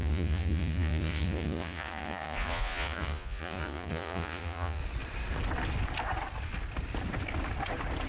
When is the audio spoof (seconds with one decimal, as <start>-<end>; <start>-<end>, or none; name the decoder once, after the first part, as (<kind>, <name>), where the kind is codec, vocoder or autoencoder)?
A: 0.0-4.8 (vocoder, Vocos)